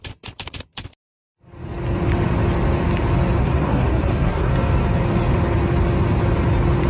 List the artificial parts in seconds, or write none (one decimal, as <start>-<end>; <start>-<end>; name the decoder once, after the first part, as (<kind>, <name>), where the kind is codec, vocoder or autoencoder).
3.4-4.5 (codec, SNAC)